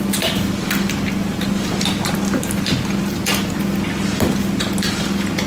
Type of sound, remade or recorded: recorded